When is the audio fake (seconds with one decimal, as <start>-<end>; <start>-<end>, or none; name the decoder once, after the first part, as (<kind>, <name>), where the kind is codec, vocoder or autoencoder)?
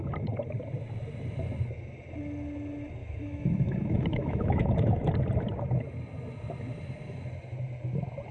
3.0-5.1 (autoencoder, DAC-VAE)